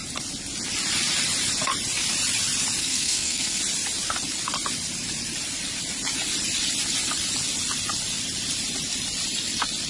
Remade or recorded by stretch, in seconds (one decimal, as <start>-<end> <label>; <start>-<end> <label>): 0.0-2.8 recorded; 2.8-3.6 remade; 3.6-9.9 recorded